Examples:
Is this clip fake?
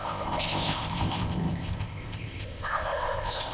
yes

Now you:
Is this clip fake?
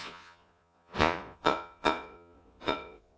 yes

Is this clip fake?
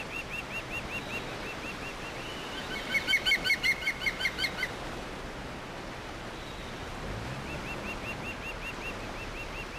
no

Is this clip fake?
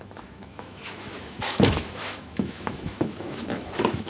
yes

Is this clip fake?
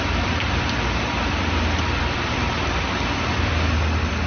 yes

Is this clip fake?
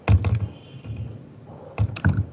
no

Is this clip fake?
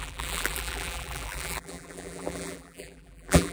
yes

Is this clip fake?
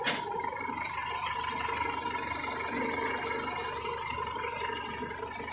no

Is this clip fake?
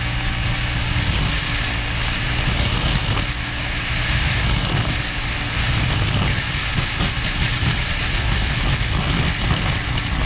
no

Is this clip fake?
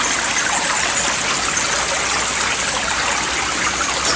no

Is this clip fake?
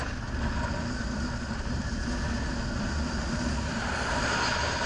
no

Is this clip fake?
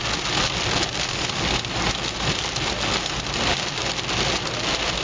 no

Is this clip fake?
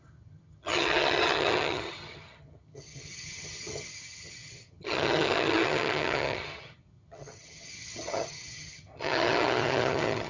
yes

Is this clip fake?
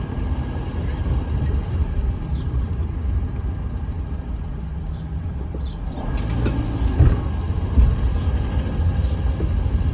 no